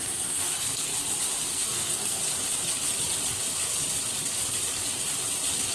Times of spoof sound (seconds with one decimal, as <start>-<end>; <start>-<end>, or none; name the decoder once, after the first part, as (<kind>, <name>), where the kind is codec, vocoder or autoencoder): 0.0-0.9 (codec, SNAC); 1.5-2.2